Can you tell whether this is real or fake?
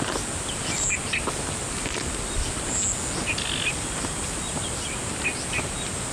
real